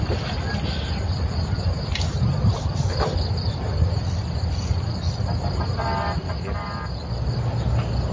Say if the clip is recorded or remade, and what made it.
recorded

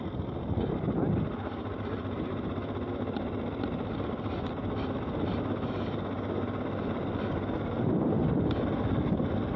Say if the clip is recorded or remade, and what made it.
recorded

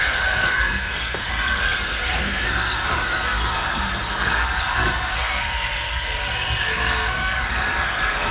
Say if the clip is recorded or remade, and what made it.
remade, codec, SNAC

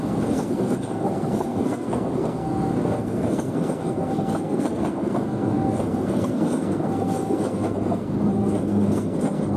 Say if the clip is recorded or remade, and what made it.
remade, codec, SNAC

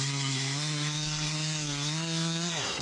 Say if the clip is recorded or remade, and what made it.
remade, codec, SNAC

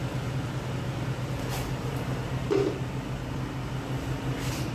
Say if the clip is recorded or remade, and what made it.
recorded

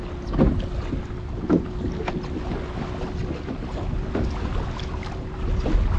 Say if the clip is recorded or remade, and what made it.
recorded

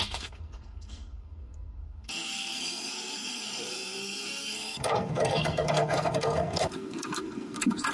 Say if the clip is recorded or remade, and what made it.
remade, codec, SNAC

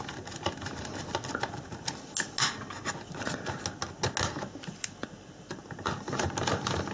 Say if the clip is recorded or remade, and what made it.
recorded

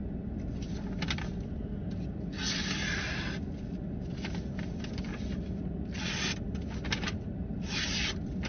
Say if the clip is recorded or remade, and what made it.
recorded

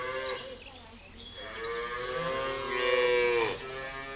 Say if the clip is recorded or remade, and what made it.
recorded